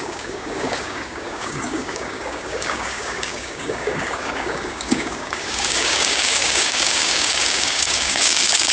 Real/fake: fake